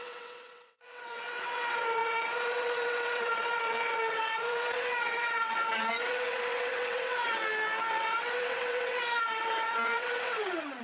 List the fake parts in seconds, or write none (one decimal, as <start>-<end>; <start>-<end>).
0.0-7.4; 7.9-10.8